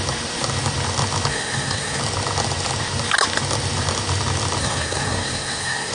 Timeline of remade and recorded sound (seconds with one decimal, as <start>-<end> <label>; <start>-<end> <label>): 0.0-1.3 recorded; 1.3-2.0 remade; 2.0-4.6 recorded; 4.6-5.9 remade